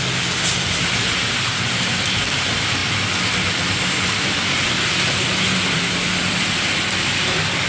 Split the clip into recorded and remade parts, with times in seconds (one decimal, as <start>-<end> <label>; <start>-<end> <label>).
0.0-7.7 recorded